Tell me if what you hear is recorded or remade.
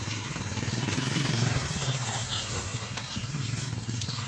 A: remade